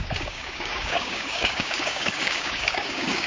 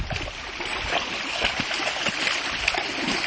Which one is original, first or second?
second